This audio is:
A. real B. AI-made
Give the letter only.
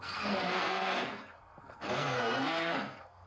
B